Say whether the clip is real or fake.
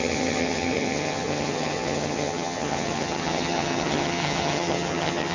fake